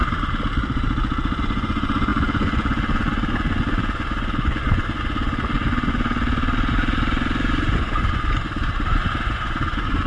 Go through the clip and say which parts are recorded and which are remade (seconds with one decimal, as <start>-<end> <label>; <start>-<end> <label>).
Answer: 0.0-1.4 recorded; 1.4-10.1 remade